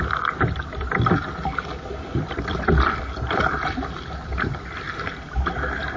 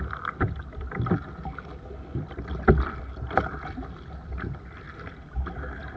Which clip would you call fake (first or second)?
first